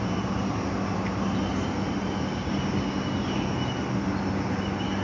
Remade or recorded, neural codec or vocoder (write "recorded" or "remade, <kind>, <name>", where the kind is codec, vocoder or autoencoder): recorded